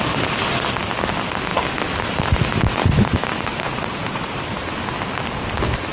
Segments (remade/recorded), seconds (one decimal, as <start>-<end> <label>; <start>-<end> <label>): 0.0-3.5 recorded; 3.5-4.4 remade; 4.4-5.9 recorded